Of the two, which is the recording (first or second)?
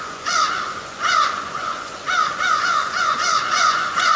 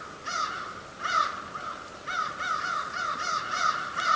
second